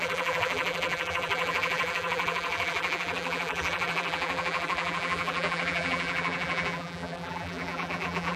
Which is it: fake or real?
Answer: fake